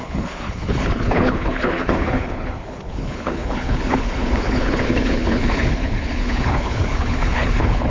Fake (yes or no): yes